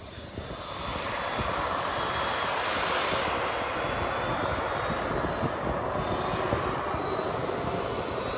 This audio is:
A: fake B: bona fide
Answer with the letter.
B